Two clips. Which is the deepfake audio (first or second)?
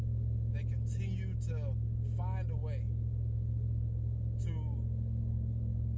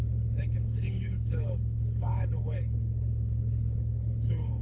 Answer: second